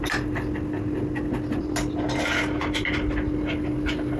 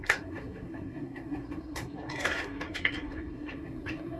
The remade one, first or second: second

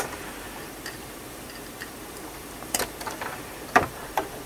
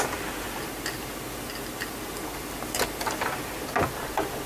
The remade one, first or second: first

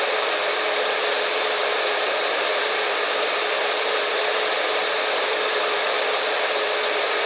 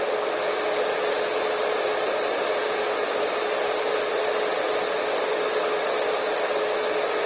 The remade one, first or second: first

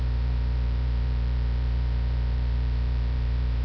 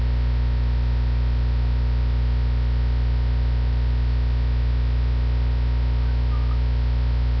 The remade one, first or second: first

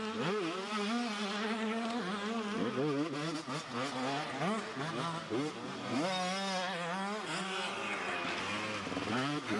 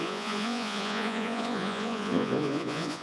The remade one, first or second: second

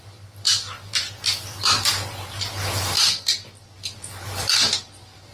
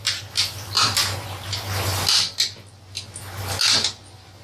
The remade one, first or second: first